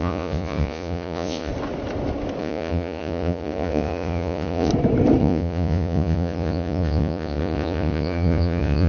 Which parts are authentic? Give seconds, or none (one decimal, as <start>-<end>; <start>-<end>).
1.5-2.4; 4.7-5.2